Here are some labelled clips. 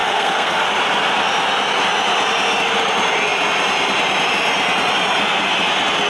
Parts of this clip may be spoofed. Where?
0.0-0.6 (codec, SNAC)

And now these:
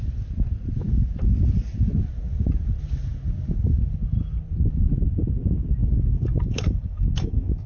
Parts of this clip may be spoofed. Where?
5.8-7.7 (codec, DAC)